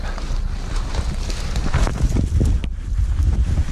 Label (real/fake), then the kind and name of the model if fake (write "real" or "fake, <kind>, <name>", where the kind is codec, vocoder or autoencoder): real